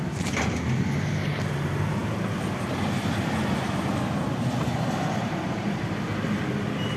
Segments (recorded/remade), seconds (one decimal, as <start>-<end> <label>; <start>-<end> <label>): 0.0-7.0 recorded